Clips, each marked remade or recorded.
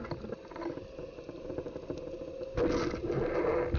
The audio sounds recorded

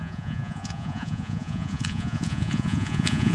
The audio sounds remade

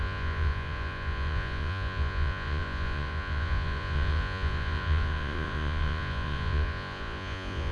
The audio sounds remade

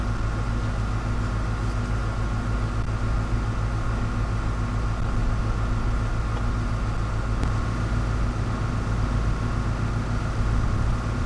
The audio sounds recorded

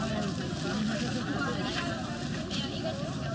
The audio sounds recorded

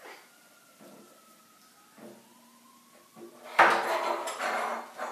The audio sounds recorded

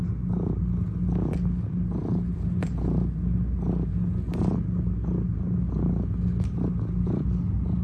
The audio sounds recorded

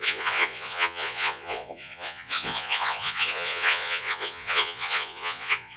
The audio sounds remade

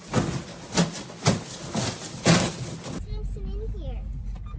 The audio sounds recorded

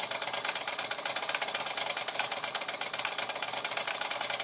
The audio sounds recorded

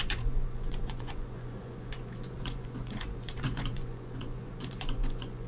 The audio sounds remade